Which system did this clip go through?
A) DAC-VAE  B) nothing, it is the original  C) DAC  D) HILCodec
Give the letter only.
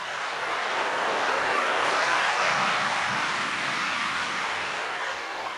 C